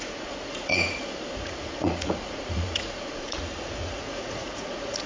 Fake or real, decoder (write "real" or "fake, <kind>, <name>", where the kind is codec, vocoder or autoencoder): fake, vocoder, Vocos